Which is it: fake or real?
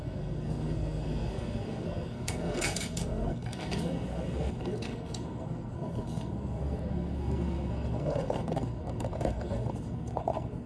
fake